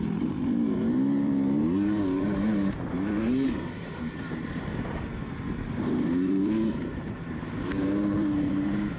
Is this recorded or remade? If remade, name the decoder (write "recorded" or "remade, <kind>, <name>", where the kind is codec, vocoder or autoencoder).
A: remade, vocoder, BigVGAN v2